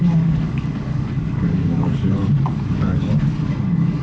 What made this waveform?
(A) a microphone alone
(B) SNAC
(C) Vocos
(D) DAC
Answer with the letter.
D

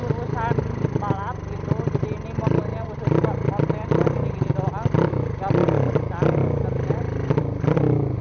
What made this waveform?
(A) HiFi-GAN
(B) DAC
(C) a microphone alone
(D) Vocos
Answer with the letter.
C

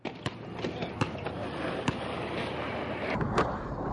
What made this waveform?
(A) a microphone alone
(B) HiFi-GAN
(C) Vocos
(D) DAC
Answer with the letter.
A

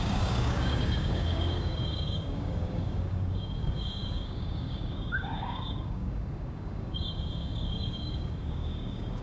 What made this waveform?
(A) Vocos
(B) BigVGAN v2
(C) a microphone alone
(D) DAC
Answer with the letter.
D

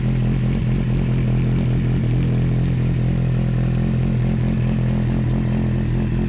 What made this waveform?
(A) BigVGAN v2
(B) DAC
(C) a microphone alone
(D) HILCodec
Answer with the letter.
C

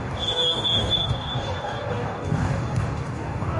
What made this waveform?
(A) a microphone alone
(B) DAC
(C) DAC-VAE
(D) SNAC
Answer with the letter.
B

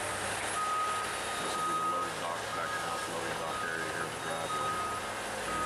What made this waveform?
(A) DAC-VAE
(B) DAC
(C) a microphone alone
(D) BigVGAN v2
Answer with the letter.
C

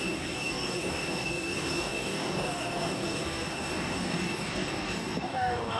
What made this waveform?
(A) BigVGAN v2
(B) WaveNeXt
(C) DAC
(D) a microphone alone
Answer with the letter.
C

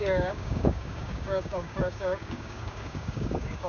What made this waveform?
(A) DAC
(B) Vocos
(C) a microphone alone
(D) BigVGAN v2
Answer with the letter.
A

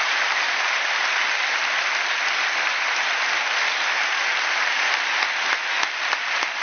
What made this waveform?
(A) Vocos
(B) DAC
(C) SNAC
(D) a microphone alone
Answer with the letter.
D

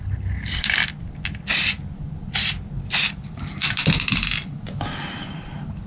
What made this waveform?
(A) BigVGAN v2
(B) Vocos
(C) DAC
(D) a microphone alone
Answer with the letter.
D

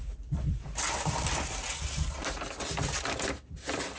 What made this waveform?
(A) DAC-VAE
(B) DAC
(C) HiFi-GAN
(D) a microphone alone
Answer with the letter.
D